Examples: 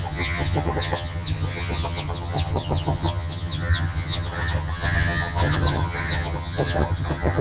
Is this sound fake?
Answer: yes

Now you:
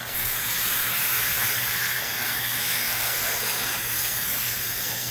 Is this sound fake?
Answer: yes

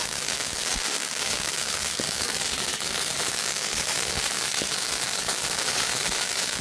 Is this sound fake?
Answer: yes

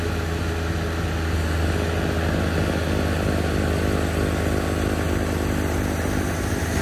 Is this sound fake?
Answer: no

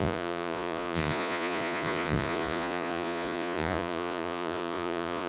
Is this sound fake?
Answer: yes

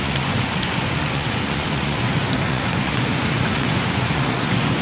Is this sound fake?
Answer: yes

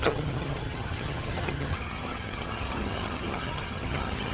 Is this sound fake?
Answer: yes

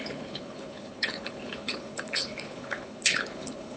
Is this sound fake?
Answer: yes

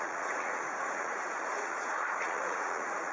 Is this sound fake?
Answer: yes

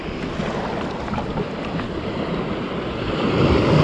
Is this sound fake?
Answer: no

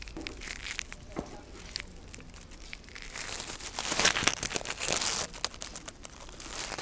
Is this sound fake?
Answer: no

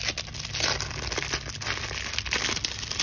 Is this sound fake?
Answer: no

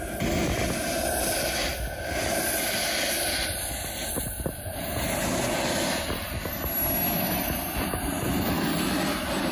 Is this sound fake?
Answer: no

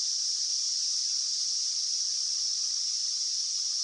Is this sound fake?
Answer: yes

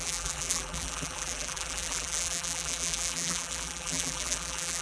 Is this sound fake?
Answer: yes